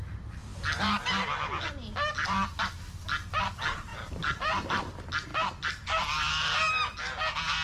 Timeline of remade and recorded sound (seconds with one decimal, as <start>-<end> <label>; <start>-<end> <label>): 0.0-2.2 recorded; 2.2-2.7 remade; 2.7-3.9 recorded; 3.9-4.8 remade; 4.8-7.6 recorded